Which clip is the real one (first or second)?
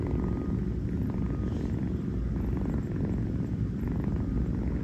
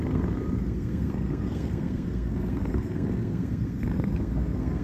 first